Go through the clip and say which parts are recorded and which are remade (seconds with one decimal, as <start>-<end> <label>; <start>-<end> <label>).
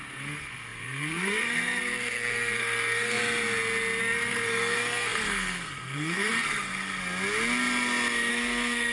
0.0-3.2 remade; 3.2-4.0 recorded; 4.0-7.0 remade; 7.0-8.3 recorded; 8.3-8.9 remade